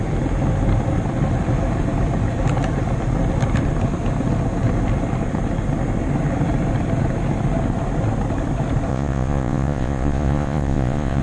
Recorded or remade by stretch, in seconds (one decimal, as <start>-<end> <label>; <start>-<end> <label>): 0.0-8.9 recorded; 8.9-11.2 remade